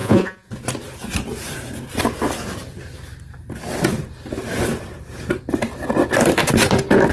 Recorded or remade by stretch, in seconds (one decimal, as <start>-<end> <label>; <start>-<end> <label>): 0.0-0.5 remade; 0.5-7.1 recorded